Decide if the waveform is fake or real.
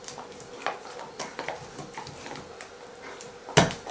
real